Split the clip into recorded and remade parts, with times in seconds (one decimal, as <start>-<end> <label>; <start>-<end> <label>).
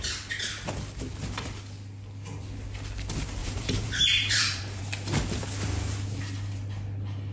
0.0-3.4 recorded; 3.4-4.8 remade; 4.8-7.3 recorded